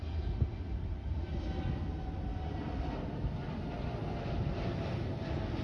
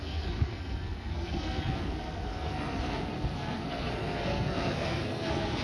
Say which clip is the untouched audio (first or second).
first